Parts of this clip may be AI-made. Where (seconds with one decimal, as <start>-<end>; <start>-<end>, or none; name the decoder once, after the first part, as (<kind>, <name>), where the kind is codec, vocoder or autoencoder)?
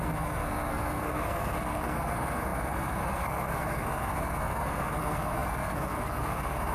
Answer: 0.0-6.7 (codec, SNAC)